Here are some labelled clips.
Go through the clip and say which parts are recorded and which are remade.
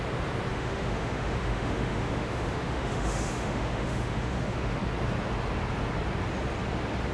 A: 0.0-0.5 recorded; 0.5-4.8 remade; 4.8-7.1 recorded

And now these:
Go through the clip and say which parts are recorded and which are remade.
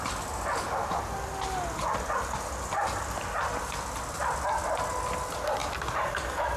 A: 0.0-6.6 recorded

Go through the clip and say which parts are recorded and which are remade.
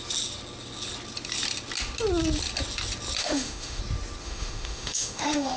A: 0.0-3.2 recorded; 3.2-3.8 remade; 3.8-4.2 recorded; 4.2-5.6 remade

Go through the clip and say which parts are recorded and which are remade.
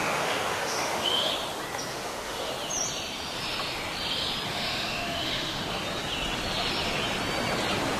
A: 0.0-1.3 remade; 1.3-1.9 recorded; 1.9-2.5 remade; 2.5-4.5 recorded; 4.5-5.6 remade; 5.6-8.0 recorded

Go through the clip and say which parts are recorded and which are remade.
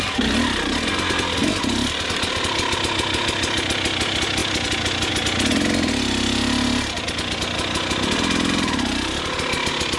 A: 0.0-10.0 recorded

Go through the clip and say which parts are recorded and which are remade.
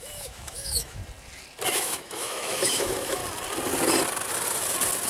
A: 0.0-1.0 remade; 1.0-1.7 recorded; 1.7-3.2 remade; 3.2-5.1 recorded